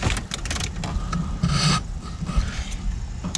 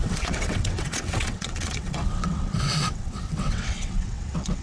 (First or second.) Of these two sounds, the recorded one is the first